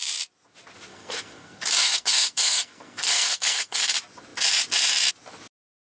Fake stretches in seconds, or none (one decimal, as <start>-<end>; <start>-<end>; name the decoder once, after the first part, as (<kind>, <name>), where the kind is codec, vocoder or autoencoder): 0.9-3.8 (codec, SNAC)